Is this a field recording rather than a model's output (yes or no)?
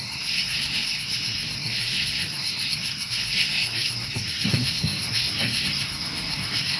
no